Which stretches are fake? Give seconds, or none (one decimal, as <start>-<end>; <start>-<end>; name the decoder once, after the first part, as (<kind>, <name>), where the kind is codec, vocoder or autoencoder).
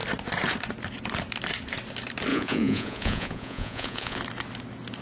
2.3-4.2 (vocoder, Vocos)